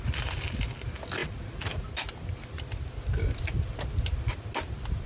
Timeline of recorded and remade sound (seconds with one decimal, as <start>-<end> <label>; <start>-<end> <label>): 0.0-5.1 recorded